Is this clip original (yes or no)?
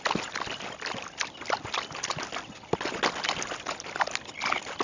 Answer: yes